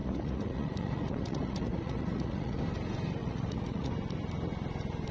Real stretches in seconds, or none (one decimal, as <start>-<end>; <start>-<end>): 2.6-3.2; 3.9-5.1